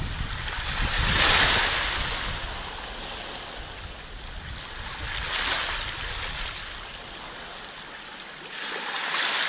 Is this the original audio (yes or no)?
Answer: yes